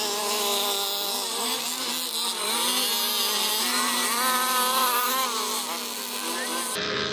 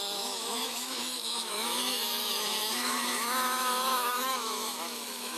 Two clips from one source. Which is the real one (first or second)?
first